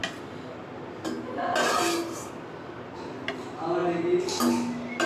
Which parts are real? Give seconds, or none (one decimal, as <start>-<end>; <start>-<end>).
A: 0.0-5.1